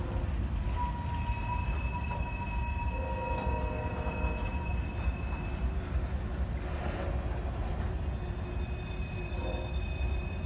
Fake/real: real